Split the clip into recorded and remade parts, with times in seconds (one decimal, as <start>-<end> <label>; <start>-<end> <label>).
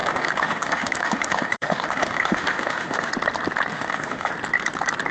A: 0.0-3.1 remade; 3.1-3.7 recorded; 3.7-4.3 remade; 4.3-5.1 recorded